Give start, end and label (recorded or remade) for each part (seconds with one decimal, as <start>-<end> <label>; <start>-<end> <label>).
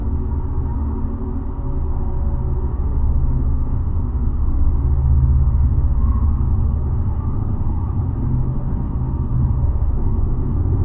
0.0-2.7 recorded; 2.7-4.4 remade; 4.4-6.7 recorded; 6.7-10.8 remade